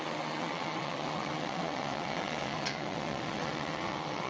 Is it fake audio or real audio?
fake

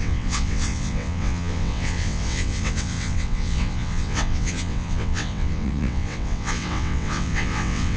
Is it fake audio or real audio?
fake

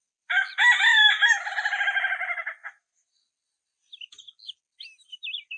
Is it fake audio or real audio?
real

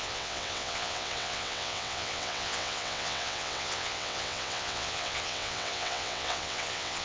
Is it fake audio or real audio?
fake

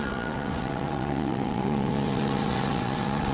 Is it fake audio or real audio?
fake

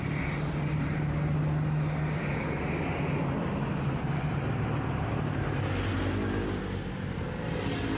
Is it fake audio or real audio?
real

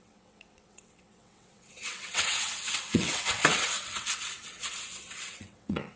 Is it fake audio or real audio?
fake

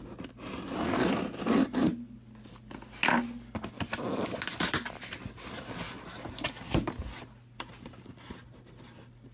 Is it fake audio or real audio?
real